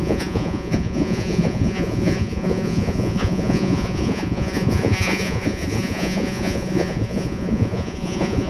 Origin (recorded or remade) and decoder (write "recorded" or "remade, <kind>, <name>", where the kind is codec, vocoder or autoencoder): remade, vocoder, Vocos